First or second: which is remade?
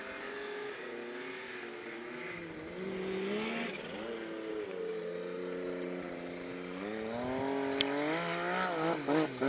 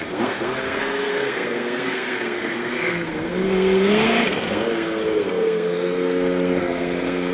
second